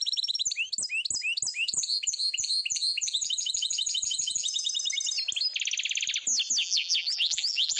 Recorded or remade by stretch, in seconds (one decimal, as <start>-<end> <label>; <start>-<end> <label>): 0.0-1.5 recorded; 1.5-4.7 remade; 4.7-6.6 recorded; 6.6-7.8 remade